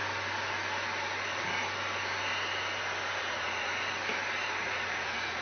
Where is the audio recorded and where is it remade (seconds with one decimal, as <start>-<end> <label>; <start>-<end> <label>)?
0.0-3.2 recorded; 3.2-3.7 remade; 3.7-4.6 recorded; 4.6-5.4 remade